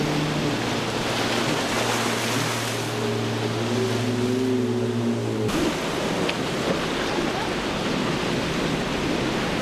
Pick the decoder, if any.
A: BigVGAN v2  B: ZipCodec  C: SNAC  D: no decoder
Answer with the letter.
D